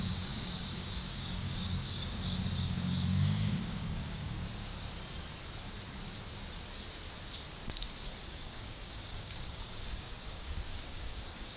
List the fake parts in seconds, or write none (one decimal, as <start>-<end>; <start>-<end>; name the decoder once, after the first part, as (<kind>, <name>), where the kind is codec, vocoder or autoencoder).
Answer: 0.0-2.0 (codec, DAC); 2.6-4.4; 8.3-11.6